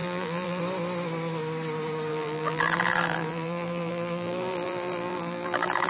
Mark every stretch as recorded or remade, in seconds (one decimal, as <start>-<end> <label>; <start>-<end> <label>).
0.0-0.6 remade; 0.6-2.1 recorded; 2.1-5.9 remade